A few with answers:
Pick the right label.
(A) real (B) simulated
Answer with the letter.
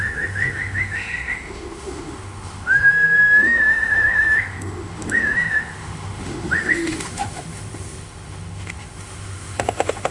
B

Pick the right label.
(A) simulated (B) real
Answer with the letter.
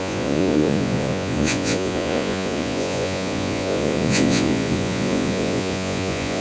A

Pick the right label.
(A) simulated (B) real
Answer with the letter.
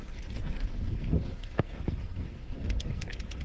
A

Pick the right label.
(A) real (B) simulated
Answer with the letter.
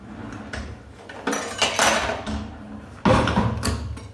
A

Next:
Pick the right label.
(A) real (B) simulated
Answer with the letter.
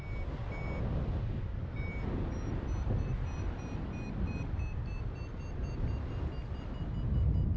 A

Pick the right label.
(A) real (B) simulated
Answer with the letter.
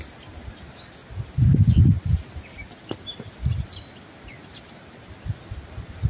A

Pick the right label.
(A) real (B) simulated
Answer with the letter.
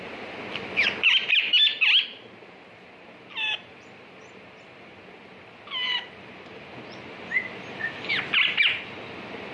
A